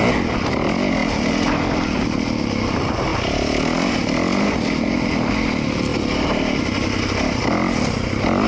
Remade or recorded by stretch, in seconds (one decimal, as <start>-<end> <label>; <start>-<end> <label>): 0.0-5.9 recorded; 5.9-6.6 remade; 6.6-8.5 recorded